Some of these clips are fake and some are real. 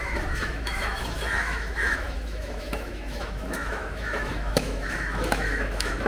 fake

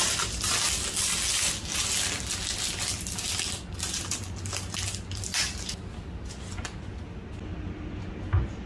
real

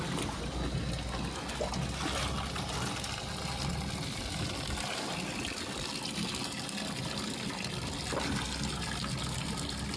real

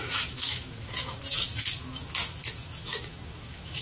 fake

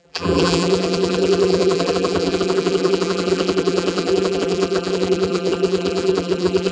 fake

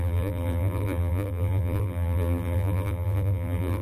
fake